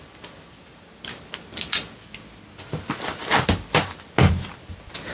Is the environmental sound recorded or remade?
recorded